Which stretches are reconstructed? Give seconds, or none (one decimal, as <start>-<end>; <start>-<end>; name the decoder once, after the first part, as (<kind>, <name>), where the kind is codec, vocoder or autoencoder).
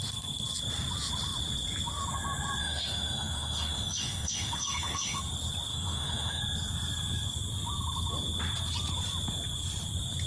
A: 2.6-5.2 (autoencoder, DAC-VAE); 5.7-6.4